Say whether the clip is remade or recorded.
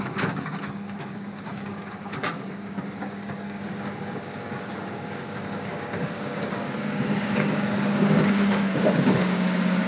remade